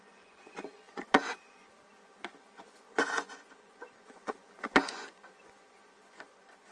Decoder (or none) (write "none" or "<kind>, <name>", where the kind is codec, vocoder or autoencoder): vocoder, Vocos